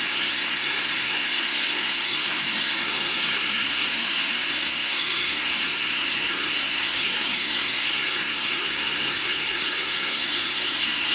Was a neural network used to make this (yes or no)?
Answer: yes